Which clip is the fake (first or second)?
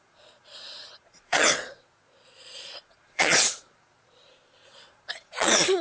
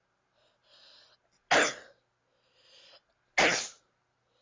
first